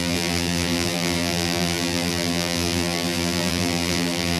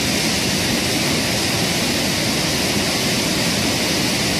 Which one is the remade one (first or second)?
first